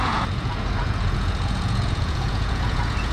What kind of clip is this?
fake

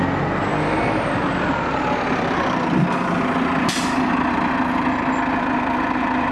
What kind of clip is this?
real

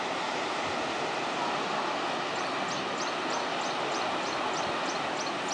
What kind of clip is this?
real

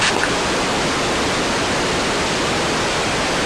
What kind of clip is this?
real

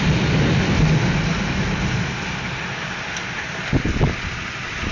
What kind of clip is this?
real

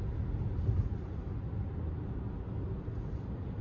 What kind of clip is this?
real